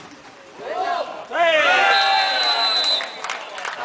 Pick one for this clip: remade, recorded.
recorded